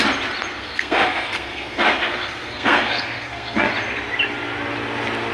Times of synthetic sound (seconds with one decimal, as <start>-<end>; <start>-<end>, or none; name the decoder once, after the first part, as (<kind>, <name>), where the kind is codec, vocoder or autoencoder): 0.5-3.7 (codec, SNAC)